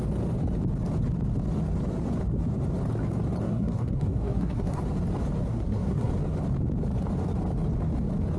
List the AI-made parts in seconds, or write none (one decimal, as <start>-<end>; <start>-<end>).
3.4-4.8; 5.5-6.1